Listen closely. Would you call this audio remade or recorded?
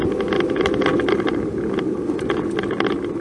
recorded